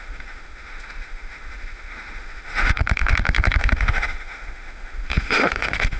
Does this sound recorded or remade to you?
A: remade